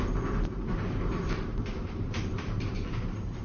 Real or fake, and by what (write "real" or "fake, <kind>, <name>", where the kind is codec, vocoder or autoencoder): fake, vocoder, BigVGAN v2